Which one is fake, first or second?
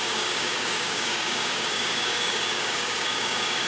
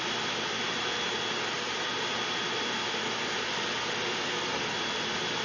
first